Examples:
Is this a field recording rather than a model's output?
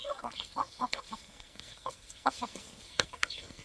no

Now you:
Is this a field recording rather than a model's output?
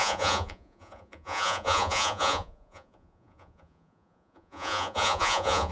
no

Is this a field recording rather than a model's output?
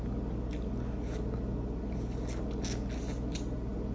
yes